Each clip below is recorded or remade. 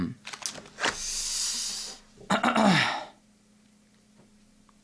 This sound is recorded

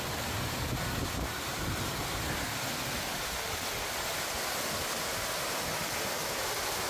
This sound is recorded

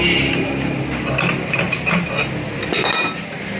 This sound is recorded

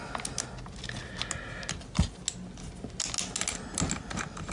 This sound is recorded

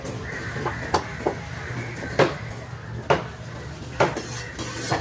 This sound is recorded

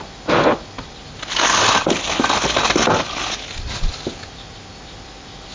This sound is recorded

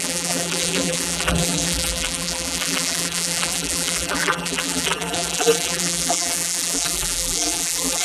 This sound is remade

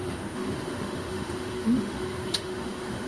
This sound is remade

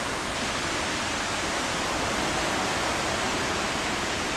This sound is recorded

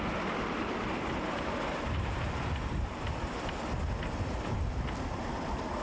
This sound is recorded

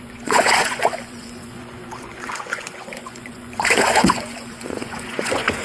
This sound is remade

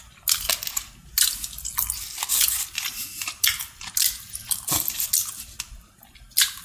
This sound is recorded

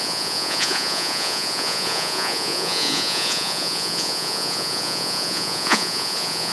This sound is remade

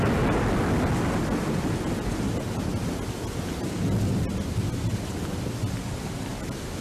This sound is recorded